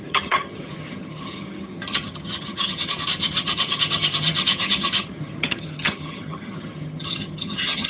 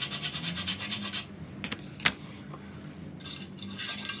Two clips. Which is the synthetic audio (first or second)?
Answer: first